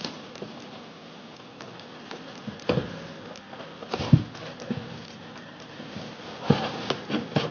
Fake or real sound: real